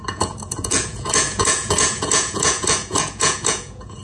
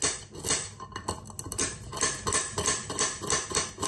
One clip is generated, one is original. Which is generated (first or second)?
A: first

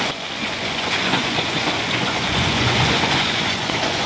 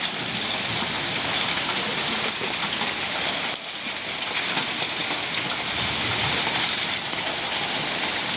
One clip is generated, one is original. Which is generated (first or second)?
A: first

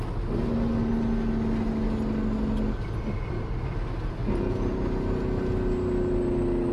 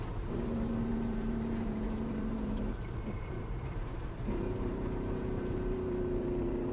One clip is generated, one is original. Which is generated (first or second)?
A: second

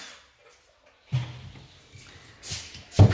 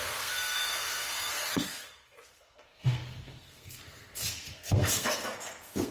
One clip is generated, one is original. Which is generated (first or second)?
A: second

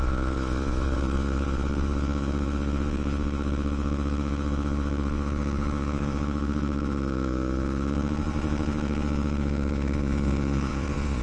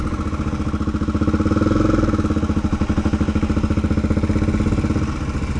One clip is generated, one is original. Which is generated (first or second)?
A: first